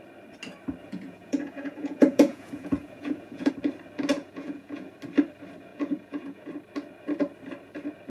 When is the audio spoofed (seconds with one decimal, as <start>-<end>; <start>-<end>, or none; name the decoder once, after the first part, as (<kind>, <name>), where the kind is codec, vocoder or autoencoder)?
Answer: 0.8-3.5 (vocoder, Vocos); 4.1-4.9; 5.7-6.5